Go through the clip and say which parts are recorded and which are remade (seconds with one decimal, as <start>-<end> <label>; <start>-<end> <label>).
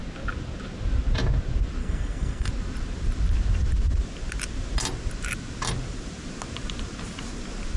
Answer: 0.0-1.8 recorded; 1.8-2.5 remade; 2.5-7.8 recorded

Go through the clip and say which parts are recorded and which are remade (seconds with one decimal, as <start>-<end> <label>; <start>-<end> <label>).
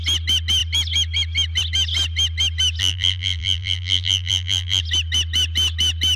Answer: 0.0-2.8 recorded; 2.8-4.8 remade; 4.8-6.2 recorded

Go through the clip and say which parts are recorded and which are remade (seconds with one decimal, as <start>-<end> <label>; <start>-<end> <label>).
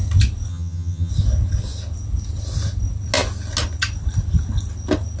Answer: 0.0-0.5 recorded; 0.5-1.1 remade; 1.1-5.2 recorded